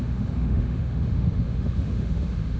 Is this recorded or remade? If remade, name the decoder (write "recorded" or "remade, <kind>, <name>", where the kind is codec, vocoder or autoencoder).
remade, autoencoder, DAC-VAE